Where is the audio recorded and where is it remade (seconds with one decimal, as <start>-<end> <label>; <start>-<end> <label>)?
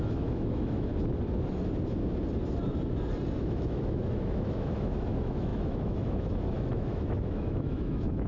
0.0-0.9 remade; 0.9-3.4 recorded; 3.4-8.3 remade